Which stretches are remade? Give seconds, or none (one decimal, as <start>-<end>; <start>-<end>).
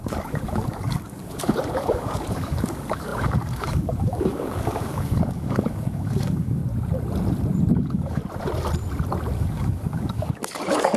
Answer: 0.0-6.6; 7.6-8.2; 9.4-11.0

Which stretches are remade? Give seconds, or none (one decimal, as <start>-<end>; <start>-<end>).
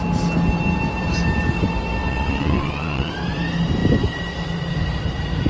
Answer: 2.1-3.1